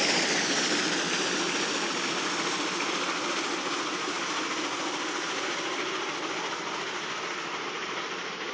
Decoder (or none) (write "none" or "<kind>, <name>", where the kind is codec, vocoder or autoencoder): none